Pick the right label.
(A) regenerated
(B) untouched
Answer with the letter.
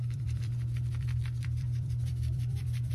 A